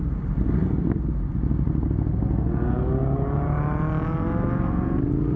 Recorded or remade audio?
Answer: recorded